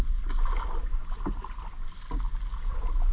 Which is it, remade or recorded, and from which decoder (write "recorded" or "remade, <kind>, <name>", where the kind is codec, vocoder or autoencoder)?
recorded